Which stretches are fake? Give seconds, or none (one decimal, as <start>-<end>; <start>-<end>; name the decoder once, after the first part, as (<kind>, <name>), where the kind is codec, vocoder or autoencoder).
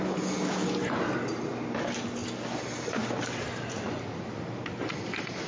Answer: none